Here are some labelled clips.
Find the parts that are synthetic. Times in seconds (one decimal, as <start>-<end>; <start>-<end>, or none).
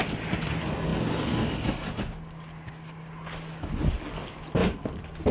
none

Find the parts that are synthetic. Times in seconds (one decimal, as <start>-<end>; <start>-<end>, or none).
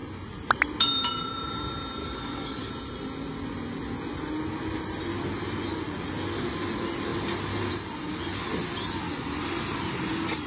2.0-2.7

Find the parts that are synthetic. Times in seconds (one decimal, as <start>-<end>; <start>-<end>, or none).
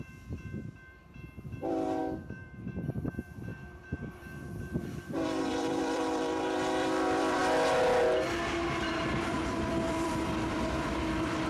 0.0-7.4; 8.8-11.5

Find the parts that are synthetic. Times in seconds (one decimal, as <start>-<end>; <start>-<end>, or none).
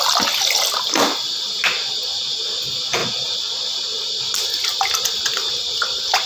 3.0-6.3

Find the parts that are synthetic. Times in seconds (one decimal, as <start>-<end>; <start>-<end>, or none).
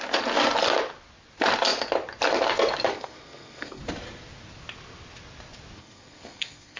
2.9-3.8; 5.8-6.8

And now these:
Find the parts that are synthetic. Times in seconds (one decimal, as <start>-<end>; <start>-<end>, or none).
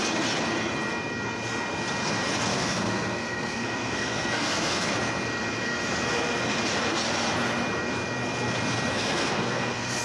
2.5-4.9; 8.9-10.0